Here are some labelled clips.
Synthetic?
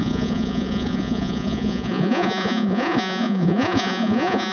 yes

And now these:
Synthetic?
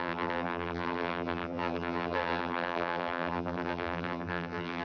yes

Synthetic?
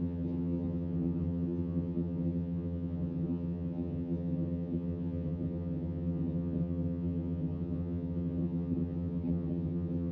yes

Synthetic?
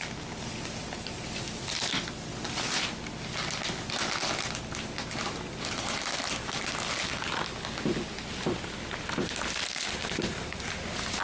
no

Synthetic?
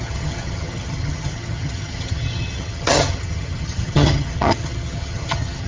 yes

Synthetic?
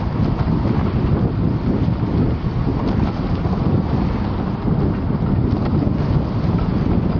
no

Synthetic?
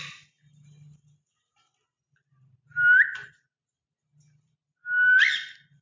no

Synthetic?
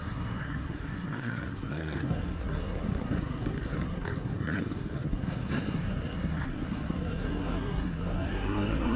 yes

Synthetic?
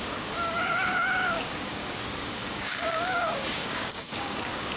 yes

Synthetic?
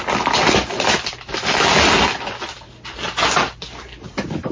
no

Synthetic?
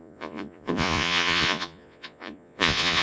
yes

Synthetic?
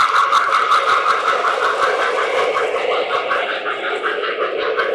yes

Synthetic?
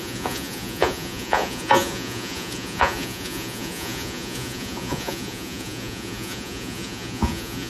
yes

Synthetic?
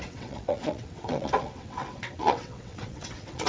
yes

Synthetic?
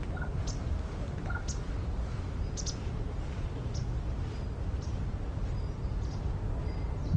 no